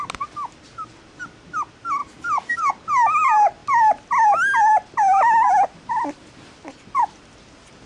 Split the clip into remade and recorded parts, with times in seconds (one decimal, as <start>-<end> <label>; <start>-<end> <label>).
0.0-2.0 recorded; 2.0-2.7 remade; 2.7-7.9 recorded